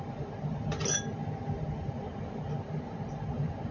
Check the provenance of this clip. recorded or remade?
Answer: remade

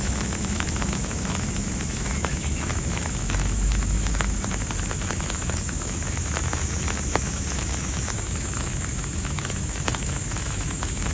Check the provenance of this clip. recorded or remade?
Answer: remade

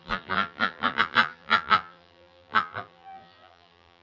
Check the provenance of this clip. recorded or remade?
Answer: remade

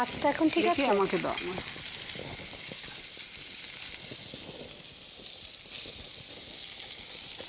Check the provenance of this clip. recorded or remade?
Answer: recorded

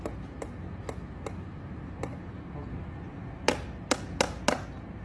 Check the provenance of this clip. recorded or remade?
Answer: recorded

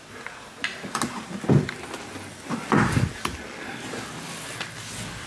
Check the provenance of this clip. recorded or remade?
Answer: recorded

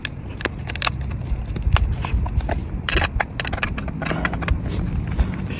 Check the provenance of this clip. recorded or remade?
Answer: recorded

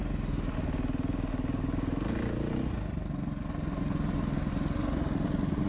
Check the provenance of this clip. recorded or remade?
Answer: recorded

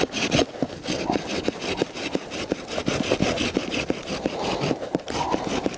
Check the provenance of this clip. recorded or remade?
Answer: recorded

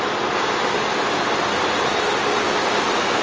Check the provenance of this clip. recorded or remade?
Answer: recorded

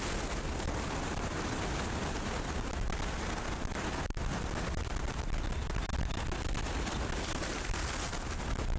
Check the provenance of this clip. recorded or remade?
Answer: recorded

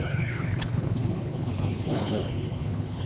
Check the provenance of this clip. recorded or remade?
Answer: remade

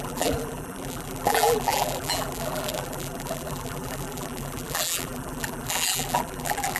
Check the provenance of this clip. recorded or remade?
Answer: remade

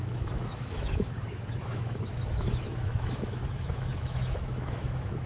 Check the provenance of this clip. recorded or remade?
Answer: remade